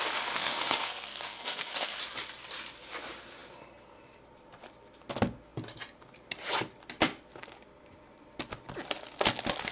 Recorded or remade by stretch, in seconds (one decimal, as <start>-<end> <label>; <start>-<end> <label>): 0.0-0.4 recorded; 0.4-2.0 remade; 2.0-9.7 recorded